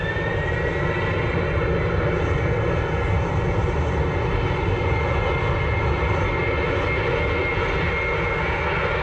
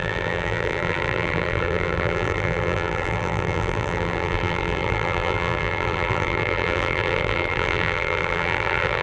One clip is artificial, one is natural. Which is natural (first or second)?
first